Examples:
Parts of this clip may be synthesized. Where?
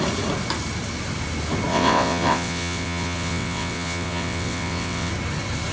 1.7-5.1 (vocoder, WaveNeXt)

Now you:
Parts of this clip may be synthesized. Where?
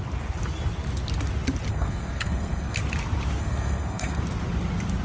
1.7-2.8 (codec, SNAC); 3.4-4.2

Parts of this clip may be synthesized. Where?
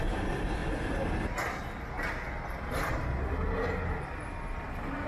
none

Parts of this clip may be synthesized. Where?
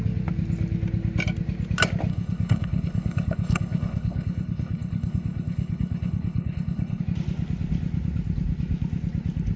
2.1-7.0 (codec, HILCodec)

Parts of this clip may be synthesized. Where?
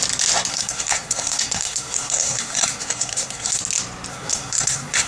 0.5-3.6 (codec, SNAC); 4.1-5.1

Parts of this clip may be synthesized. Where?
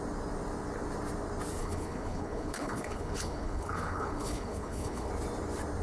1.6-5.1 (codec, HILCodec)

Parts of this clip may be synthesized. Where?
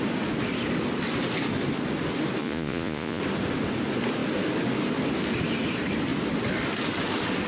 2.4-3.2 (vocoder, Vocos)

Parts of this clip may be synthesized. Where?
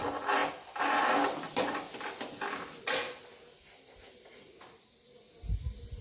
none